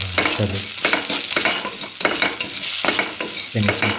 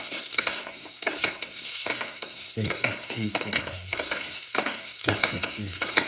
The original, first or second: first